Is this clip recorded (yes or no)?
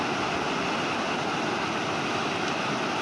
yes